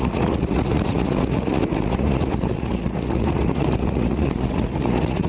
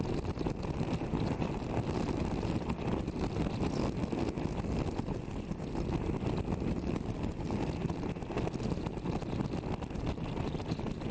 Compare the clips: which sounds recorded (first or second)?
second